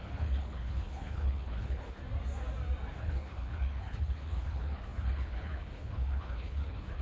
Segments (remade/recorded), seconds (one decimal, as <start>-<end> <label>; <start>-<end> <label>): 0.0-2.0 remade; 2.0-3.0 recorded; 3.0-7.0 remade